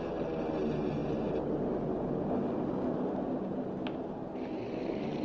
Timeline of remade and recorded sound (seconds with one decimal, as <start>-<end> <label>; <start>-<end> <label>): 0.0-5.2 recorded